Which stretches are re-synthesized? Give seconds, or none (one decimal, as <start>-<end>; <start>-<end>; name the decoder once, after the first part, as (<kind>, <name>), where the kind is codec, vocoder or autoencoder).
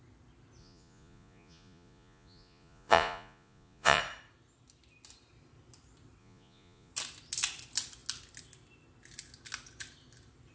0.6-4.0 (vocoder, Vocos); 6.2-6.9